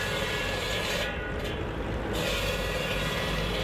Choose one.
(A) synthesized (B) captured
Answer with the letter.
B